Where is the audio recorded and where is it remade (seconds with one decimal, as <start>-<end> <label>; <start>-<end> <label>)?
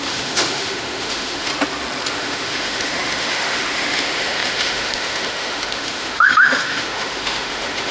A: 0.0-1.5 remade; 1.5-2.1 recorded; 2.1-7.9 remade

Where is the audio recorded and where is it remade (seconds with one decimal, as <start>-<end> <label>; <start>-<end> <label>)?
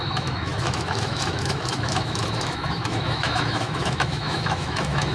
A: 0.0-5.1 remade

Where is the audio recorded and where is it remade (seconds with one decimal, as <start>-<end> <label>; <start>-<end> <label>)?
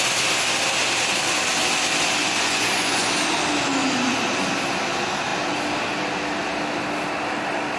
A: 0.0-2.2 recorded; 2.2-3.1 remade; 3.1-7.8 recorded